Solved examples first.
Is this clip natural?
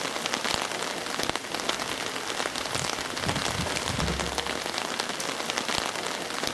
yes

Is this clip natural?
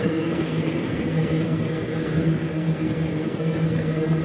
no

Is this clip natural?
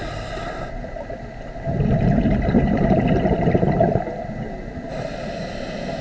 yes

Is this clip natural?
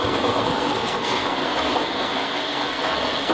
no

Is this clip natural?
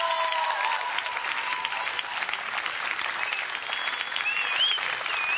yes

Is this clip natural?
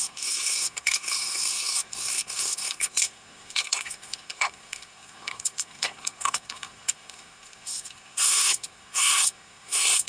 no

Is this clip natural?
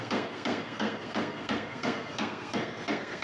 no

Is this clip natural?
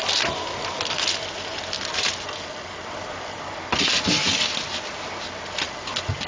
yes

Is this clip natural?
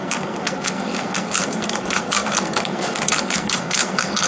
no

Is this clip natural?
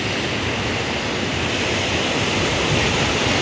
yes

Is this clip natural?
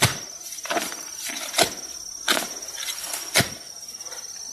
yes